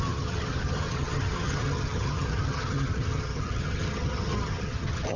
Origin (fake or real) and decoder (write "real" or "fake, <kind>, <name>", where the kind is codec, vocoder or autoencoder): fake, vocoder, HiFi-GAN